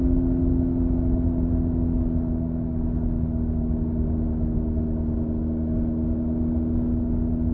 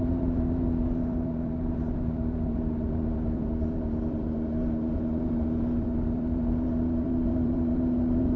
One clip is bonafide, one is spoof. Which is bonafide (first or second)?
first